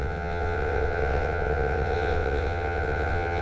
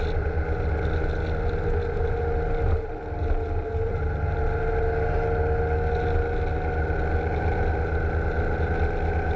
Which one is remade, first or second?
first